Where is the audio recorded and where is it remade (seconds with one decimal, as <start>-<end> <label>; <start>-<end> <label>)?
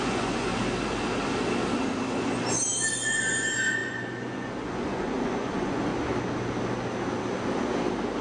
0.0-0.5 remade; 0.5-2.9 recorded; 2.9-5.9 remade; 5.9-8.2 recorded